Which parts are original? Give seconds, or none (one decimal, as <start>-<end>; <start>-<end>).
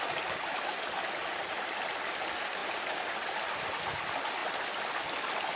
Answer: 0.0-4.4; 5.0-5.6